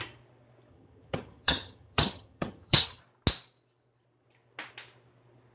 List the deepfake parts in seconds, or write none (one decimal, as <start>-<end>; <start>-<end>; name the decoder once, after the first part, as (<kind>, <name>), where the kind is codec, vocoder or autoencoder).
0.7-3.0 (vocoder, HiFi-GAN)